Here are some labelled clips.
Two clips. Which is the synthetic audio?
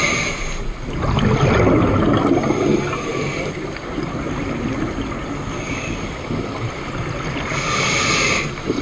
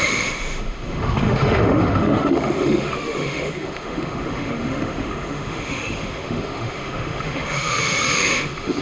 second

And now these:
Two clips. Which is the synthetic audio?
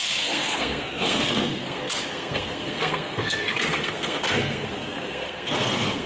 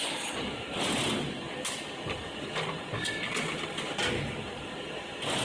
first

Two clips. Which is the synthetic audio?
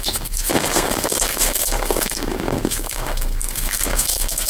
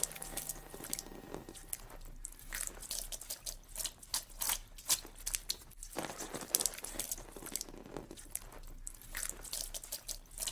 first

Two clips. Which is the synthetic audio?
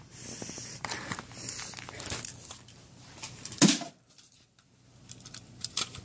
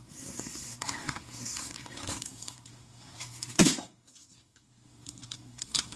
second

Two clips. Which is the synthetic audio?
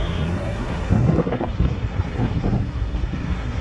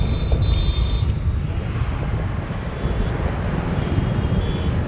first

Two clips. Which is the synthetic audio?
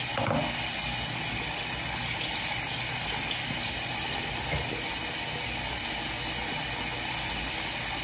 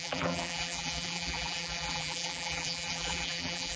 second